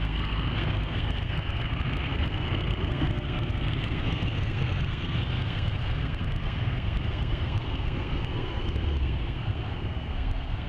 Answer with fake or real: fake